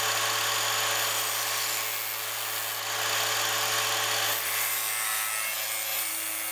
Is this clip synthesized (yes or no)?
no